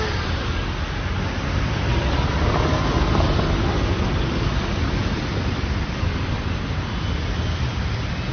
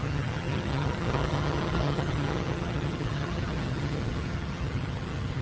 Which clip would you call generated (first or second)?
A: second